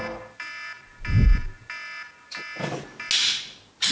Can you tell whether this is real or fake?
real